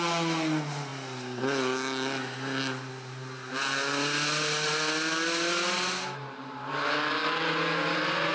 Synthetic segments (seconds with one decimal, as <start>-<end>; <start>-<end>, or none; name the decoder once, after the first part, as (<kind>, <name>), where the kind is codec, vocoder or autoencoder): none